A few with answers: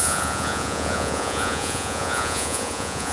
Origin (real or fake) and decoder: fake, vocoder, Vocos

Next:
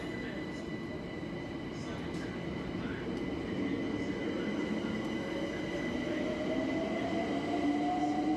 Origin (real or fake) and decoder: real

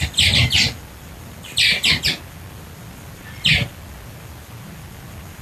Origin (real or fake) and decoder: real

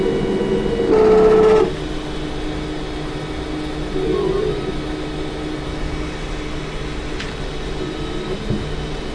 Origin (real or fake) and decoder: real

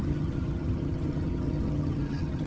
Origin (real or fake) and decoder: fake, vocoder, HiFi-GAN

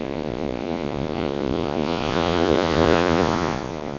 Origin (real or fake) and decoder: fake, vocoder, Vocos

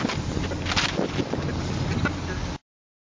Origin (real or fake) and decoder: real